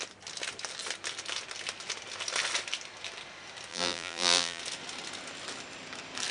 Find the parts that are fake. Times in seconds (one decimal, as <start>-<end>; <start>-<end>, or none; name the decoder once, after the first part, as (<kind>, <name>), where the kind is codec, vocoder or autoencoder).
3.7-4.6 (vocoder, BigVGAN v2)